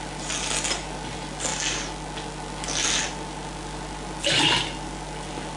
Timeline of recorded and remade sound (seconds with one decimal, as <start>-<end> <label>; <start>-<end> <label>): 0.0-5.6 recorded